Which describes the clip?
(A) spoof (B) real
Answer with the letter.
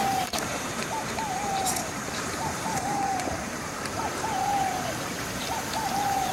A